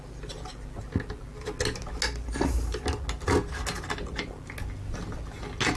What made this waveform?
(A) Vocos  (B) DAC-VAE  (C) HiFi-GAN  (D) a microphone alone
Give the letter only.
D